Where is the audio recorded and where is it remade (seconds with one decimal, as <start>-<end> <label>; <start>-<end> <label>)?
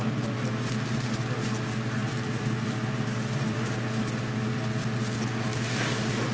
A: 0.0-2.0 recorded; 2.0-3.6 remade; 3.6-6.3 recorded